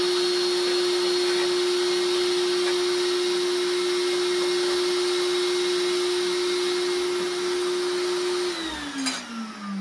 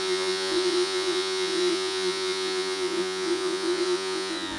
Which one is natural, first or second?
first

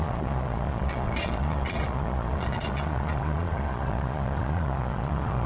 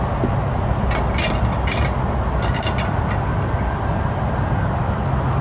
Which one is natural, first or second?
second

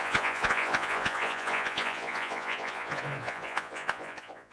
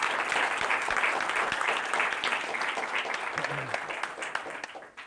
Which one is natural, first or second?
second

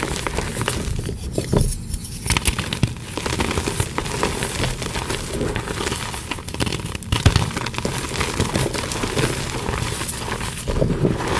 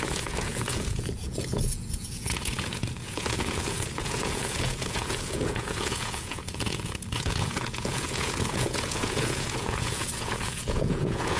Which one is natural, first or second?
first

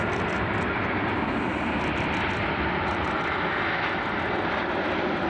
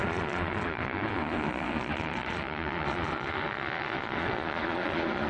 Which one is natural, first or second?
first